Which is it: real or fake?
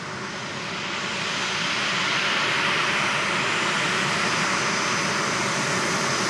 real